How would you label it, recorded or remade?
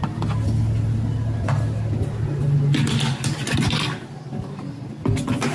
recorded